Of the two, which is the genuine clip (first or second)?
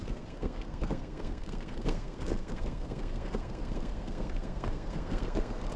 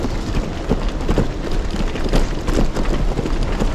second